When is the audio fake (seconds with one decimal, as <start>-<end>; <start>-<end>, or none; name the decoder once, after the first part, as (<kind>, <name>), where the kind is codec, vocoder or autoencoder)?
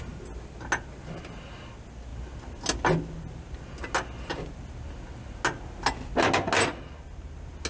none